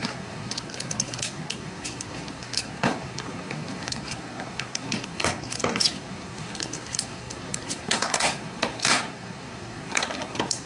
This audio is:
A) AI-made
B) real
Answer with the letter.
A